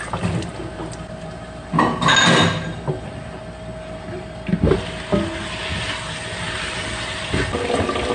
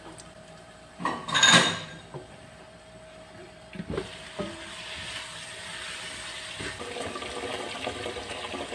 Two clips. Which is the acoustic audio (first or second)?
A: first